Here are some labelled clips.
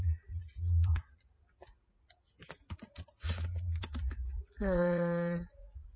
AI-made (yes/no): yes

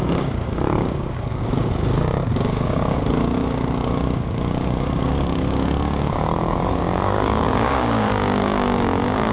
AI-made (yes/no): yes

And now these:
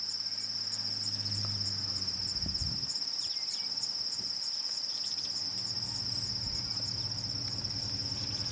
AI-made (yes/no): no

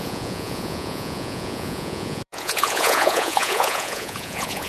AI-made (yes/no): yes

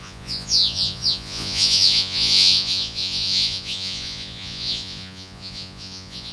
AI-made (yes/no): yes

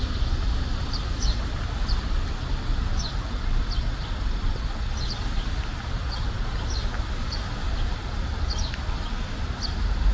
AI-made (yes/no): no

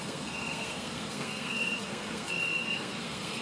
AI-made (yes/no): yes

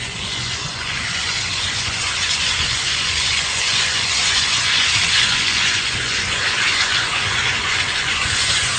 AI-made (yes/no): yes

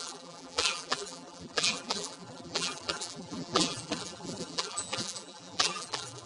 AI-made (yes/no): yes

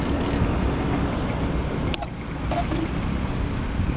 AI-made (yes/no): no